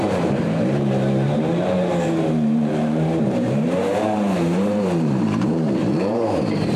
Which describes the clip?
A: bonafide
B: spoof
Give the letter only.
B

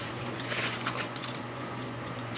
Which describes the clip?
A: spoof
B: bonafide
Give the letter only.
A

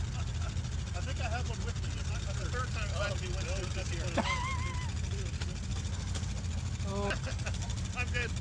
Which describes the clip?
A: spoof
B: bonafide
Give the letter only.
B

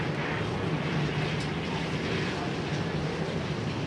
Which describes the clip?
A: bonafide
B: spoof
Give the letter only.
A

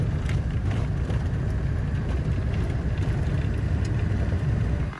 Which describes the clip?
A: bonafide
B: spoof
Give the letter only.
A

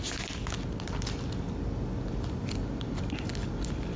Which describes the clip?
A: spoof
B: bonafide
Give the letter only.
B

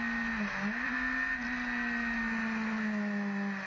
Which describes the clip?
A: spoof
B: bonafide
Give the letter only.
B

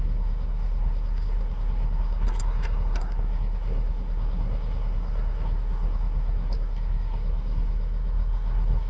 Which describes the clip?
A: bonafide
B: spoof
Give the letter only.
B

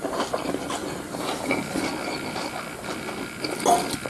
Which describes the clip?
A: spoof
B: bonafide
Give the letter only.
B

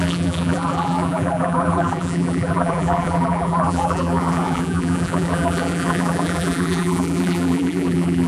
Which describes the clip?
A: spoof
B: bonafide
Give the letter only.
A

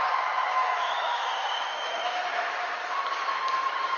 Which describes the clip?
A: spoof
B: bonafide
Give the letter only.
A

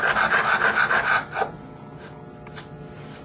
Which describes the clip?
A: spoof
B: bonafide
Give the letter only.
B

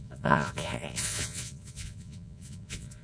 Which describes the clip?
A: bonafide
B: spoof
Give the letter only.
B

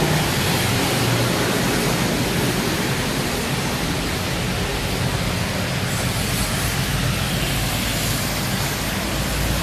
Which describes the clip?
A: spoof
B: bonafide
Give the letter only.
B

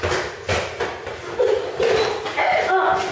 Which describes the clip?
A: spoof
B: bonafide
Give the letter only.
B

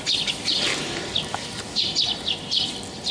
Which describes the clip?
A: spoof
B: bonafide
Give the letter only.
A